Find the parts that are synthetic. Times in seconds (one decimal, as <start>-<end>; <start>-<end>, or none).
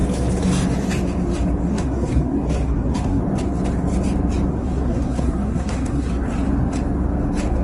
1.7-3.2; 4.5-6.1